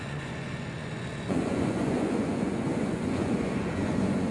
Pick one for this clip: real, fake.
fake